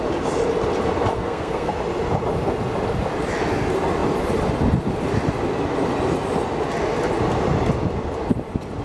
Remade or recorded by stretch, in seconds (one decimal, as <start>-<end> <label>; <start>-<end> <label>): 0.0-1.1 recorded; 1.1-1.7 remade; 1.7-8.8 recorded